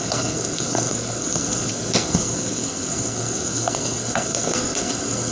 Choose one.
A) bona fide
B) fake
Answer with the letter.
B